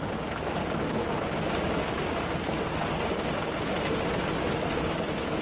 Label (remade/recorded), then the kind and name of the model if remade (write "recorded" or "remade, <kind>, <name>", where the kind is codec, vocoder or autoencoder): recorded